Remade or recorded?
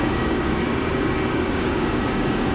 remade